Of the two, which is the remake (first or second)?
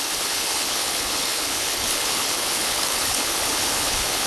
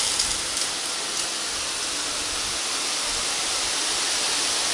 first